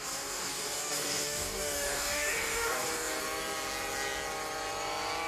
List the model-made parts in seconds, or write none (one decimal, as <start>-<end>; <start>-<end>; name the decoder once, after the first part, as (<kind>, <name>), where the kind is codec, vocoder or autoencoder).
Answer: 0.0-3.2 (codec, DAC)